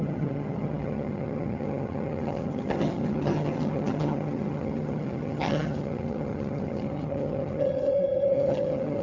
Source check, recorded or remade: remade